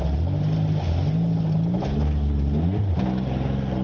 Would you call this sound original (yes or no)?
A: yes